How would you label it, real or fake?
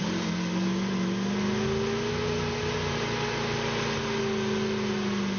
real